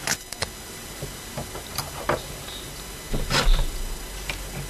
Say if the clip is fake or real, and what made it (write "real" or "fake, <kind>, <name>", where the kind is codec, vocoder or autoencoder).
real